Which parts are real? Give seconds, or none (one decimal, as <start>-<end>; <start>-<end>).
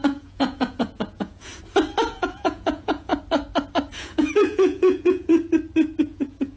1.5-2.0; 3.1-4.0; 5.3-6.0